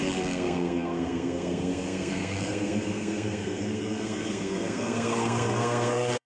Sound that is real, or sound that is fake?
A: fake